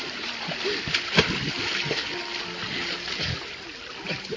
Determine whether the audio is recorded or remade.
recorded